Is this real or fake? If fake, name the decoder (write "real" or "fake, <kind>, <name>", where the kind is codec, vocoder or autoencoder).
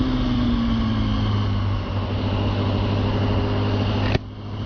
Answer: real